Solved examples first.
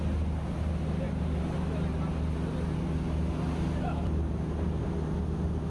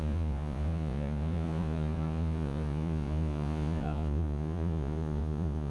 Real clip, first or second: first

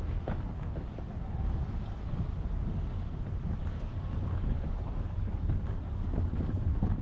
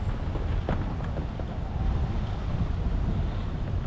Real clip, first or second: second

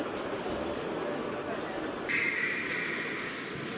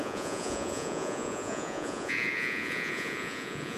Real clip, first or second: first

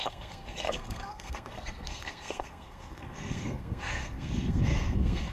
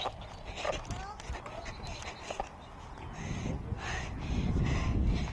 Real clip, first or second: second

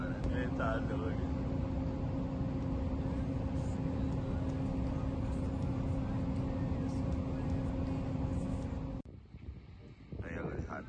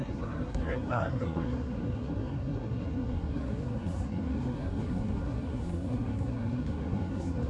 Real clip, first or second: first